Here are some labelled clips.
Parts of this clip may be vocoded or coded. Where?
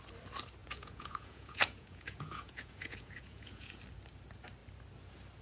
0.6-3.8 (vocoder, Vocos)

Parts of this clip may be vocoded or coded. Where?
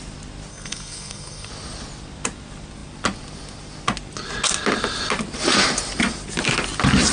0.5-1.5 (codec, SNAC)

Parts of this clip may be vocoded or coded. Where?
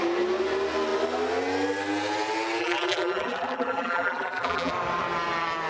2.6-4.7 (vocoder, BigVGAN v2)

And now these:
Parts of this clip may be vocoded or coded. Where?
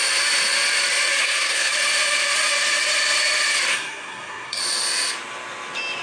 1.2-1.7 (codec, SNAC); 3.7-4.6